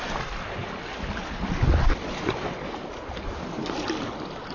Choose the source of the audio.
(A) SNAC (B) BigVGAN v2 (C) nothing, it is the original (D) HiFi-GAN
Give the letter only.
C